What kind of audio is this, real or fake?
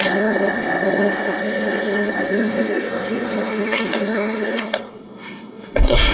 fake